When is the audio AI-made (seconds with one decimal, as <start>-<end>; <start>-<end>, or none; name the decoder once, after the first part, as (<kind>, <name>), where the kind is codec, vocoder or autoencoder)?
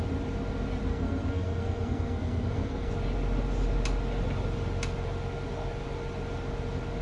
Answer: 0.9-2.9 (codec, SNAC)